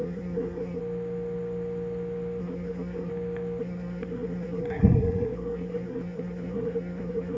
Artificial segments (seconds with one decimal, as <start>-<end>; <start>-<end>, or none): 0.0-0.8; 2.4-3.1; 3.6-7.4